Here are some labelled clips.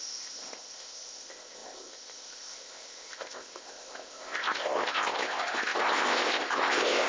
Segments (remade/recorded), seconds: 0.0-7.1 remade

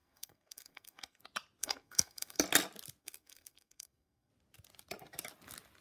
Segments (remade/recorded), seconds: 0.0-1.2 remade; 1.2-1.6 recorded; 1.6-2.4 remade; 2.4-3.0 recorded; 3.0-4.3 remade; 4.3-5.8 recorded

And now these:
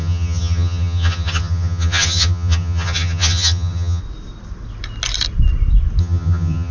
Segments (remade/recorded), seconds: 0.0-4.0 remade; 4.0-6.0 recorded; 6.0-6.7 remade